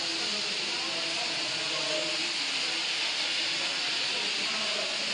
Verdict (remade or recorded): recorded